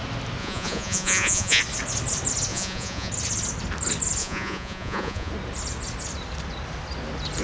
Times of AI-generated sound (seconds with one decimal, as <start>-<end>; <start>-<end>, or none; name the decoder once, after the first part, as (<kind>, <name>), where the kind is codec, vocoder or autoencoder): 0.4-1.6 (vocoder, Vocos); 2.5-3.1; 4.2-5.3